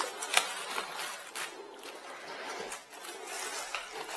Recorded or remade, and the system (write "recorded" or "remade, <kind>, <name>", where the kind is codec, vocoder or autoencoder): recorded